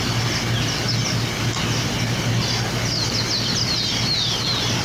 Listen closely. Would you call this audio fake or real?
real